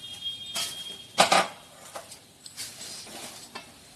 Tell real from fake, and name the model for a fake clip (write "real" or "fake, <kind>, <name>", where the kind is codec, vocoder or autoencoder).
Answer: real